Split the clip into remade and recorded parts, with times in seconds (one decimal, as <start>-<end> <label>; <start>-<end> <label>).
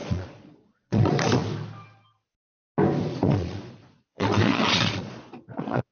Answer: 0.0-1.4 remade; 1.4-3.1 recorded; 3.1-5.9 remade